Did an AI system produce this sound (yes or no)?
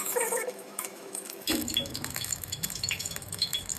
yes